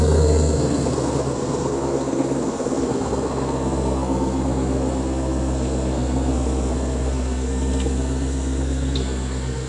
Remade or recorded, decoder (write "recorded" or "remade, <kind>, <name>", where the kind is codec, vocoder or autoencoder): remade, codec, SNAC